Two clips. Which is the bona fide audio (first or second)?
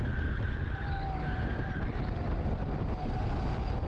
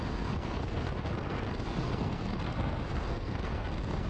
first